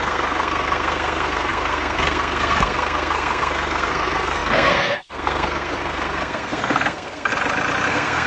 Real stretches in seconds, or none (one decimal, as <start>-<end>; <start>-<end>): 7.3-7.9